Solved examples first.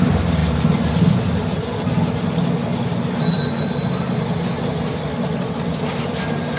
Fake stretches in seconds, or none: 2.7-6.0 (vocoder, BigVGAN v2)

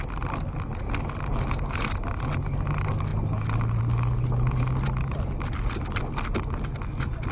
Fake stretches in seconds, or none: none

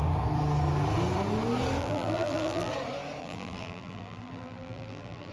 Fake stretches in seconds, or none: 1.8-2.7 (vocoder, BigVGAN v2); 3.2-5.3

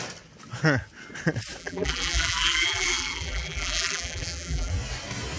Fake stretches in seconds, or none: 1.6-4.7 (vocoder, BigVGAN v2)

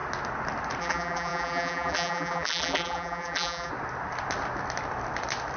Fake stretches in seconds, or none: 0.8-3.7 (vocoder, BigVGAN v2)

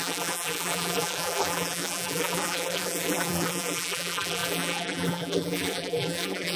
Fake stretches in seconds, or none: 0.0-6.6 (vocoder, BigVGAN v2)